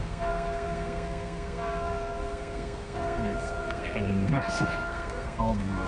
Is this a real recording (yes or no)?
no